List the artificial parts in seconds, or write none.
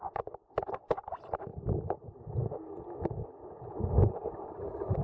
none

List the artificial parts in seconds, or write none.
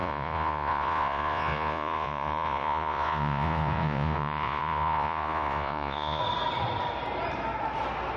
0.0-6.2 (vocoder, Vocos)